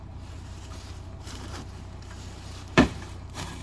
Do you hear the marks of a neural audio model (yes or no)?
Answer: yes